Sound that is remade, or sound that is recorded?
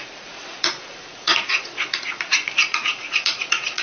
remade